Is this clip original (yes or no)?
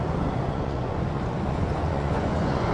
no